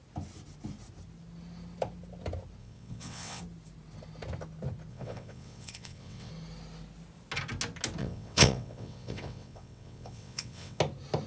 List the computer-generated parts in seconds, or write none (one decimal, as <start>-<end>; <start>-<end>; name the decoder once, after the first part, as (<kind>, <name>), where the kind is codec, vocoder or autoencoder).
2.6-3.4 (vocoder, WaveNeXt); 4.9-6.3; 8.0-10.8

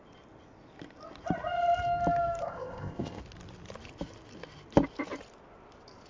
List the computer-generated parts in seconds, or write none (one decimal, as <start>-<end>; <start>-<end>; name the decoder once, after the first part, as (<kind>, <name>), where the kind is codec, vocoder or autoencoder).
2.4-3.2 (codec, ZipCodec)

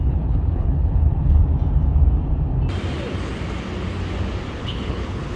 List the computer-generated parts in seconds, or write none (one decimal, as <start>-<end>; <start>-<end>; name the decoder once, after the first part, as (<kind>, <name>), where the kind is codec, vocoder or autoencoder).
0.0-1.4 (codec, HILCodec); 4.6-5.4

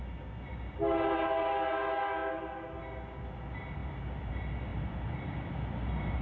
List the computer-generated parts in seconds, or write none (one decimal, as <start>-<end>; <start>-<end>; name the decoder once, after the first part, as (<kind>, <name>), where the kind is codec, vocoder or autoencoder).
4.7-5.4 (vocoder, BigVGAN v2)

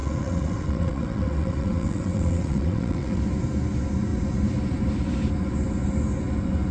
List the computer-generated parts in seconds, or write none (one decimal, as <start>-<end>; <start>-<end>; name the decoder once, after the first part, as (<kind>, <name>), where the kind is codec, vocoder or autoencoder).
0.0-3.2 (vocoder, WaveNeXt)

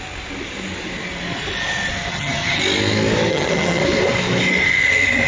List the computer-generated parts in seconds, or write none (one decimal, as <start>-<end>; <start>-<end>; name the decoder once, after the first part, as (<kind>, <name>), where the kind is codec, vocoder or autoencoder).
2.1-2.6 (vocoder, HiFi-GAN); 3.3-3.8